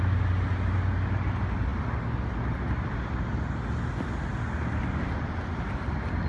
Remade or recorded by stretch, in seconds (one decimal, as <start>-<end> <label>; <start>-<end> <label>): 0.0-6.3 recorded